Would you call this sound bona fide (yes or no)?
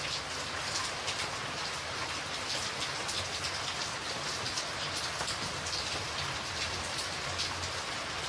yes